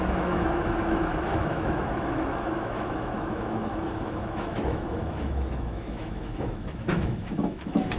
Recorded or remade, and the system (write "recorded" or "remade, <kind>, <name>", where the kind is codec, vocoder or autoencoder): remade, autoencoder, DAC-VAE